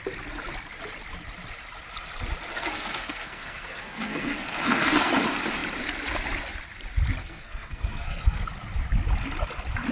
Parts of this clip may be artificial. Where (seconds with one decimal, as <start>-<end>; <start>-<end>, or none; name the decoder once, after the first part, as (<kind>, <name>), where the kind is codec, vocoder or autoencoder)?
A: 2.5-5.1 (codec, SNAC); 7.2-8.4